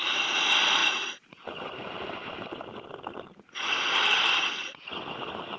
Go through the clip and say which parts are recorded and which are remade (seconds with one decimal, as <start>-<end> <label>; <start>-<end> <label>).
0.0-5.6 recorded